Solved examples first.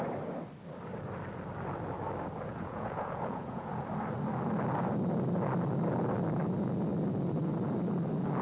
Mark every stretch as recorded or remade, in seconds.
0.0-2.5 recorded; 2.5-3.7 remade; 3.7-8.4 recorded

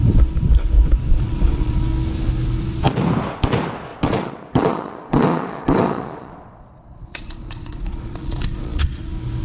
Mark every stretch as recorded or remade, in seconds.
0.0-1.1 recorded; 1.1-1.8 remade; 1.8-3.9 recorded; 3.9-9.0 remade; 9.0-9.4 recorded

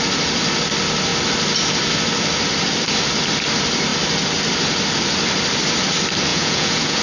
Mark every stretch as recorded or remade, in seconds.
0.0-6.3 recorded; 6.3-7.0 remade